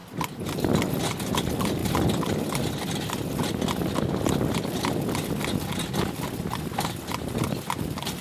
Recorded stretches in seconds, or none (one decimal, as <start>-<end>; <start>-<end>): 0.0-1.4; 1.8-6.1